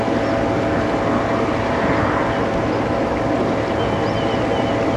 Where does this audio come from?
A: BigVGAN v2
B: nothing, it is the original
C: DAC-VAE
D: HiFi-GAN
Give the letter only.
B